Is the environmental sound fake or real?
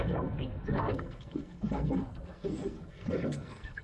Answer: fake